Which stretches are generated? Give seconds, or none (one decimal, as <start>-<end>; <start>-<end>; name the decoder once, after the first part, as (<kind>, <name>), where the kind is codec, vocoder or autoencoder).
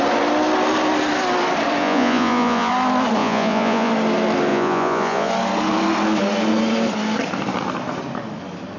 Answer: 1.8-2.7 (vocoder, Vocos); 3.2-3.9; 4.5-5.3